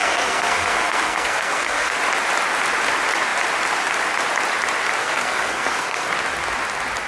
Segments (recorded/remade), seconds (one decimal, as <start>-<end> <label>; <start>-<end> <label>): 0.0-2.0 remade; 2.0-5.0 recorded; 5.0-6.1 remade; 6.1-7.1 recorded